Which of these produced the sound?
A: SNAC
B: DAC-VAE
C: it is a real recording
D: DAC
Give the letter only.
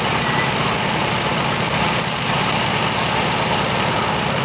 C